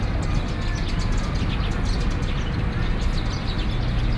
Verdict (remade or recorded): recorded